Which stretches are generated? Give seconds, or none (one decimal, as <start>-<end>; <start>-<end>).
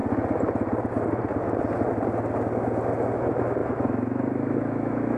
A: 3.1-5.2